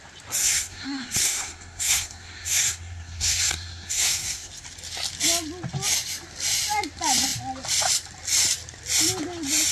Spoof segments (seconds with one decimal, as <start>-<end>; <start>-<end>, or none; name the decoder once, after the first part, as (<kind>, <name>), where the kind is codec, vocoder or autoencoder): 0.4-4.5 (codec, SNAC)